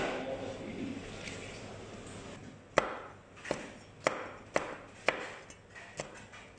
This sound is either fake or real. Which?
real